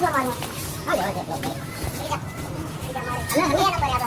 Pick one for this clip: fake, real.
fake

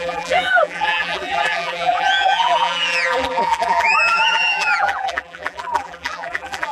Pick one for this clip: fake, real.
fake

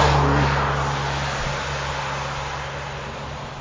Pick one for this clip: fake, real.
real